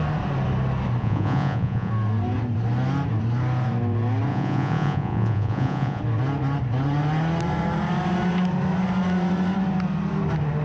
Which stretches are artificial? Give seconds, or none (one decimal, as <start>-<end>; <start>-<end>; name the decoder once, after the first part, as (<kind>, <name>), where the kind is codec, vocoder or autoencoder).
1.0-1.9 (vocoder, Vocos); 4.3-6.0